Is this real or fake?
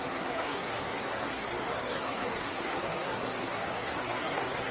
fake